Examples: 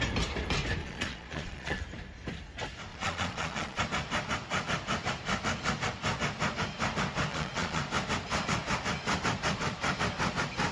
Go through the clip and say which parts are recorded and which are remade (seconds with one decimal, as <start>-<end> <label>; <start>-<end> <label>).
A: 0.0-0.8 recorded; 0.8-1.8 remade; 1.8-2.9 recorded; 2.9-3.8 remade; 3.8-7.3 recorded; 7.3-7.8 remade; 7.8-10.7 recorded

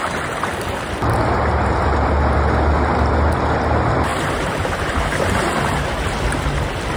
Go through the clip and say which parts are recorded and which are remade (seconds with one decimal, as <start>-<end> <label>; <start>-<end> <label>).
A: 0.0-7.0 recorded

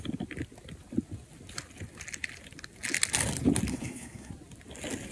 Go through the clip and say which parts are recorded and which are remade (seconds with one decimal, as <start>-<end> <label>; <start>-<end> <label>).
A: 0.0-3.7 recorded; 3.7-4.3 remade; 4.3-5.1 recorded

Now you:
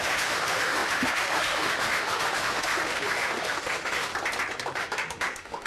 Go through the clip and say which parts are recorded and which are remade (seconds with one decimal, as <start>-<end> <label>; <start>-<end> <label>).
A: 0.0-4.1 remade; 4.1-4.8 recorded; 4.8-5.7 remade

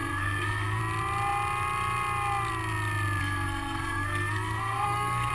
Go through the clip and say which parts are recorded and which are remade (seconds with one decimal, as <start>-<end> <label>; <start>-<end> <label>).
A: 0.0-0.8 remade; 0.8-3.2 recorded; 3.2-5.3 remade

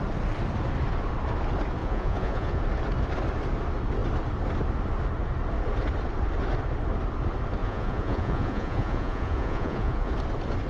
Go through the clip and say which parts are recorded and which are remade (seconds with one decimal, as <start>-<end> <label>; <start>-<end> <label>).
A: 0.0-1.8 recorded; 1.8-2.6 remade; 2.6-7.6 recorded; 7.6-10.1 remade; 10.1-10.7 recorded

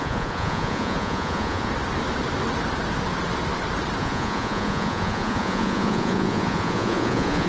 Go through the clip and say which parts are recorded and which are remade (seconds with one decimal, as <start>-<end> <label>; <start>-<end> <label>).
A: 0.0-1.7 remade; 1.7-4.0 recorded; 4.0-7.5 remade